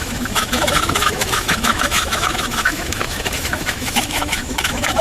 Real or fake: fake